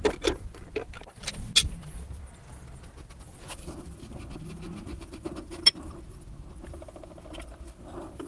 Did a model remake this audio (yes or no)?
no